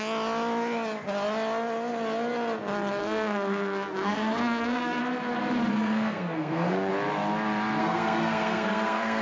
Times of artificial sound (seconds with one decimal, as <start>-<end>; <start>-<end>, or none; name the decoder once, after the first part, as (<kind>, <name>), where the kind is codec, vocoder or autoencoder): 3.0-5.0 (codec, SNAC); 5.7-6.9; 7.8-9.2